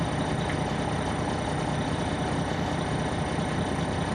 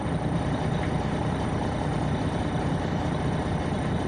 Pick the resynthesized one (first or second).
second